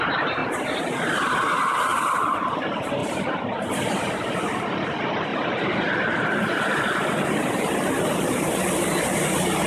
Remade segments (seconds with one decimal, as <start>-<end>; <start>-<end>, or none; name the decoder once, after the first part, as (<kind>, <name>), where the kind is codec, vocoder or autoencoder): 1.9-2.6 (vocoder, BigVGAN v2); 3.0-4.1; 5.3-8.6